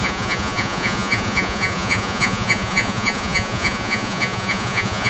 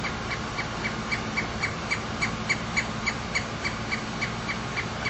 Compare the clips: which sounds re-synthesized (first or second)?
first